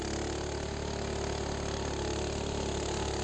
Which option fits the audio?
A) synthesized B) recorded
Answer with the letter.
B